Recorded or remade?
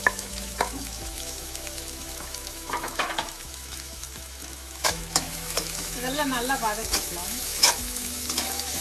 remade